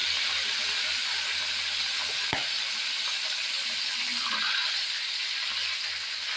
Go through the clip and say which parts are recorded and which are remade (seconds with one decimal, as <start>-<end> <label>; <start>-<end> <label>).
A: 0.0-6.4 recorded